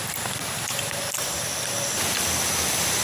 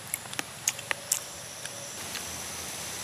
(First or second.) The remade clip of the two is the first